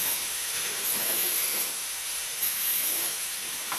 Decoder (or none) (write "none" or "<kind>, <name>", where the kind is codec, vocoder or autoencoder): autoencoder, DAC-VAE